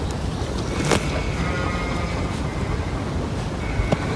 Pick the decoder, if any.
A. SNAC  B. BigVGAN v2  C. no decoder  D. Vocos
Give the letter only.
C